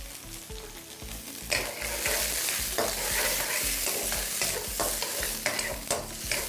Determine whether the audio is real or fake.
real